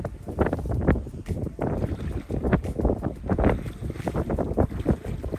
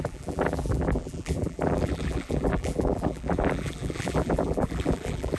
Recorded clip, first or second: first